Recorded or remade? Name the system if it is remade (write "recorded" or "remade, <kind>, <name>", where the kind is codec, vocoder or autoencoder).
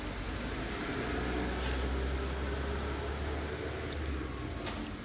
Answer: recorded